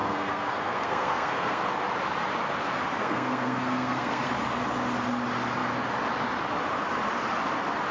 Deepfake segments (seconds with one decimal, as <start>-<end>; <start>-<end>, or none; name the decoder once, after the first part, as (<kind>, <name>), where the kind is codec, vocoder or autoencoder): 0.0-1.6 (codec, SNAC); 3.0-4.3

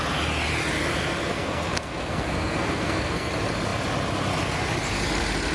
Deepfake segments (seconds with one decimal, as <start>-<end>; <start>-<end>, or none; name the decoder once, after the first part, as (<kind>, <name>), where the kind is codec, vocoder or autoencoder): 1.3-3.3 (codec, SNAC)